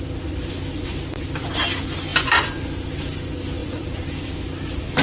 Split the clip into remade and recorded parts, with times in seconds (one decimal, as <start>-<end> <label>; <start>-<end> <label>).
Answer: 0.0-3.6 recorded; 3.6-4.3 remade; 4.3-5.0 recorded